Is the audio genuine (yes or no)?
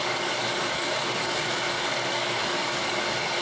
no